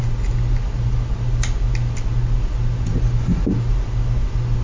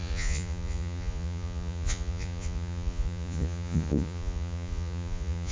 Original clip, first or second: first